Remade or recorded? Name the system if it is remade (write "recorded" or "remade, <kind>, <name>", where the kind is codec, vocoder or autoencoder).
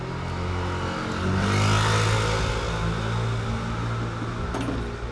recorded